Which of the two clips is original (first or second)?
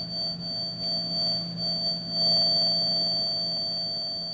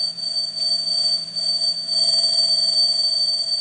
first